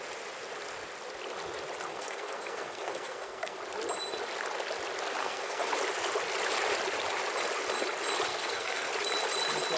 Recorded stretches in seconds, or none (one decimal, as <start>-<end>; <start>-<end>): 0.0-1.9; 3.6-5.2; 5.7-8.3; 8.9-9.8